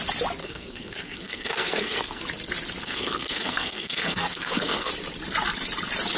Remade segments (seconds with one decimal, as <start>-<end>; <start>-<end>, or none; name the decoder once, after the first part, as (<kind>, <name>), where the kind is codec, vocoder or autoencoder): 0.4-2.2 (codec, SNAC); 2.8-4.9

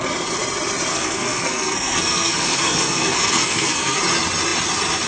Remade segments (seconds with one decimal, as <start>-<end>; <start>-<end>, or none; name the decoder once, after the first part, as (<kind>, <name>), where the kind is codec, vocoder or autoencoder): 0.9-4.0 (codec, SNAC)